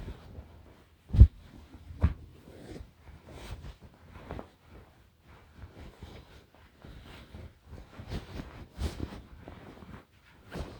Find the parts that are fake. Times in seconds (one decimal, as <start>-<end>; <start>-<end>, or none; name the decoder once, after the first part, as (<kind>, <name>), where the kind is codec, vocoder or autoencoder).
2.3-4.9 (vocoder, BigVGAN v2); 9.0-10.8